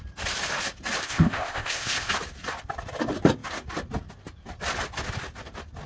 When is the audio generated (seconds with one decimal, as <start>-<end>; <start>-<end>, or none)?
1.0-2.1